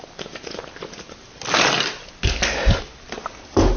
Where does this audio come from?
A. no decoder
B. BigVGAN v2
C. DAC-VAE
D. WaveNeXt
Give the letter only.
A